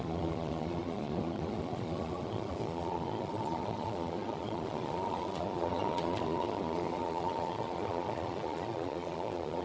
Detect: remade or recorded remade